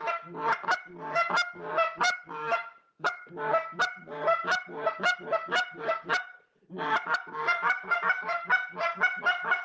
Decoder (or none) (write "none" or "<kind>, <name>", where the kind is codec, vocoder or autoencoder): none